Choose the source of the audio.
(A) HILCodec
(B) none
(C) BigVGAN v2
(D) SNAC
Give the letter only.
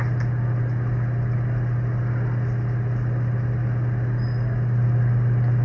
B